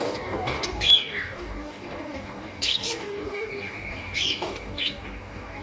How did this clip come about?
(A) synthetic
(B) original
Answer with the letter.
A